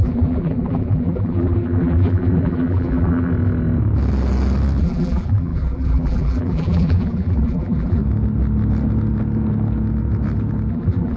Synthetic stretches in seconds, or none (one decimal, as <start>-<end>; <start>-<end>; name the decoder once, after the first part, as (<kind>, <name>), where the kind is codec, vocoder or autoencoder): 0.0-3.3 (vocoder, BigVGAN v2); 4.8-8.0; 10.7-11.2